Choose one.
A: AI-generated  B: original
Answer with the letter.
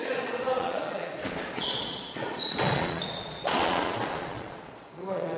A